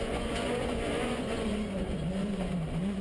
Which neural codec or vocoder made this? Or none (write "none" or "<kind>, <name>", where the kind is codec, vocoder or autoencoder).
vocoder, Vocos